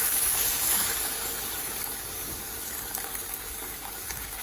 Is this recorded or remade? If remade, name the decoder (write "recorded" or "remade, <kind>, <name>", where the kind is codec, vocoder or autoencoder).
remade, codec, DAC